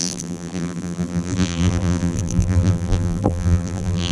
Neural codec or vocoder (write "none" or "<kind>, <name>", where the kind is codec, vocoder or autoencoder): vocoder, BigVGAN v2